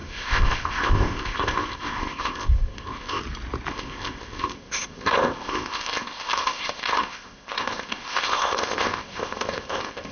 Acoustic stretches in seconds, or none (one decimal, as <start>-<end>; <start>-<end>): 3.2-3.7